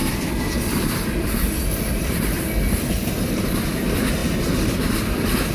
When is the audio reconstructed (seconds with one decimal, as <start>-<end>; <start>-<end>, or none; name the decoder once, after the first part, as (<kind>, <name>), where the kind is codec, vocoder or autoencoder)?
0.0-3.2 (vocoder, BigVGAN v2); 4.2-5.5